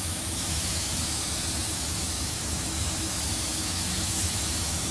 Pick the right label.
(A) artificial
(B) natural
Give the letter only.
A